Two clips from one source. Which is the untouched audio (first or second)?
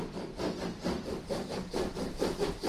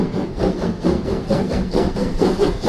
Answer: first